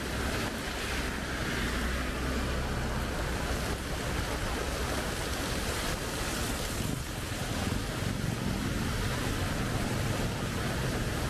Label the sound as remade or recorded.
recorded